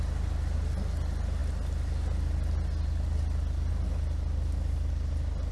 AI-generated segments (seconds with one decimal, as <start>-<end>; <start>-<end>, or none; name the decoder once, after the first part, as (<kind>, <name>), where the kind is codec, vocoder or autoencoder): none